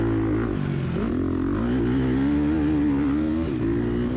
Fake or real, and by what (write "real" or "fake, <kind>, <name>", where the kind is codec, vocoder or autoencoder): real